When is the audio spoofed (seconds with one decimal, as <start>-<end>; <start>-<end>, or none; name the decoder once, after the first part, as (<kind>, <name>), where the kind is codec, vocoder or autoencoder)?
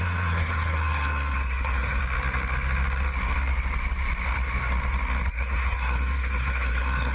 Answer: 0.0-2.0 (codec, SNAC); 5.3-7.1